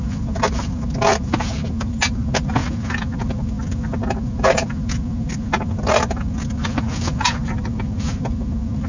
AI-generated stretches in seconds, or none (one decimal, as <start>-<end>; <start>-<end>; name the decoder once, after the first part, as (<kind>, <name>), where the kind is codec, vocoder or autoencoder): none